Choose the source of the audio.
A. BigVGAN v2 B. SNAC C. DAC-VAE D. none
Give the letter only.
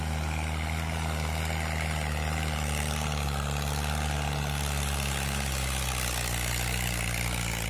D